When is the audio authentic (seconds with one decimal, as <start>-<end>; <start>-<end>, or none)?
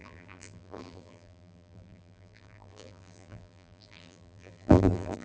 none